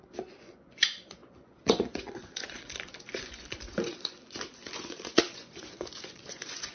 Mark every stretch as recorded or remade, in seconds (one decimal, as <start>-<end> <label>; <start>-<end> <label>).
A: 0.0-6.7 remade